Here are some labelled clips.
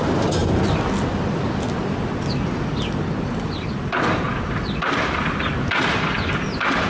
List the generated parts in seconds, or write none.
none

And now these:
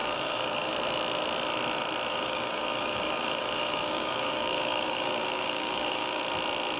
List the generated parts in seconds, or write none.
0.0-0.7; 2.1-6.2

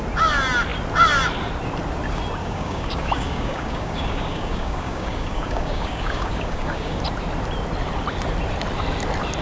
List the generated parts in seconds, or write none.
2.4-7.0

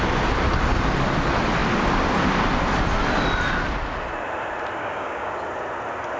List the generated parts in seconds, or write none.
4.8-5.3